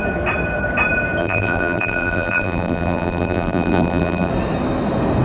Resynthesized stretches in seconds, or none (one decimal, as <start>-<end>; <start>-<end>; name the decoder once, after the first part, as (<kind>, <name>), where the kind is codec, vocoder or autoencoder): 1.2-4.3 (vocoder, BigVGAN v2)